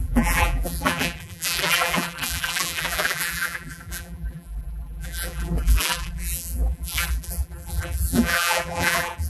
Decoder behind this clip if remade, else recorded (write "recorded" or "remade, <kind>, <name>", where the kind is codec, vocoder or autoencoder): remade, vocoder, BigVGAN v2